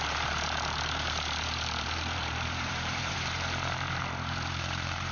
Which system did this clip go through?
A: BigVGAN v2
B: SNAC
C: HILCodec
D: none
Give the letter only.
A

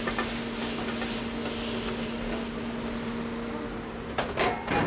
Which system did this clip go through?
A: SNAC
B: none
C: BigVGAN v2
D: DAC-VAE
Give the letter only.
B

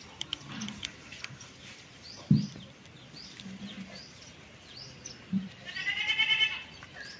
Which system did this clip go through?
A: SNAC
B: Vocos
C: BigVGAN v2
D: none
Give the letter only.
C